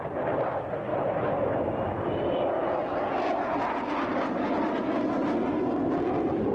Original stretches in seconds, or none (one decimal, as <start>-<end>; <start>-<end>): 0.0-0.9; 2.5-6.5